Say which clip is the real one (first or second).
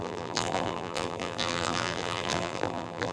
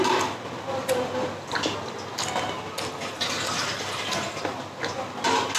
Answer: second